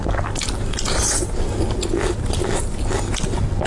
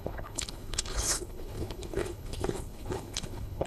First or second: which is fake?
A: second